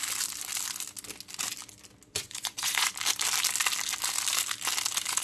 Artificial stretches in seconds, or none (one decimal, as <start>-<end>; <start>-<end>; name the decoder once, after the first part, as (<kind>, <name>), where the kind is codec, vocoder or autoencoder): 2.1-2.9 (vocoder, Vocos)